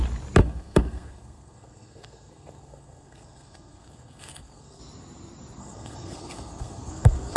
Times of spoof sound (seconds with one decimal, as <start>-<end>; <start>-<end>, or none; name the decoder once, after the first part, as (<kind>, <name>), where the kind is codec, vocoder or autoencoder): 0.4-4.8 (codec, SNAC); 5.6-7.4